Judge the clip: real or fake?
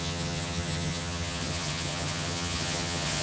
fake